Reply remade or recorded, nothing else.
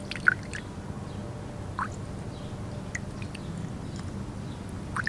recorded